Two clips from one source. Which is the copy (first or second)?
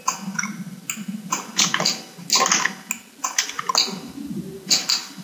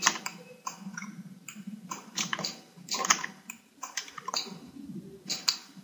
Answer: second